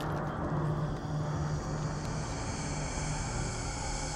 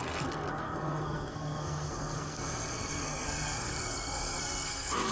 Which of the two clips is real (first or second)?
first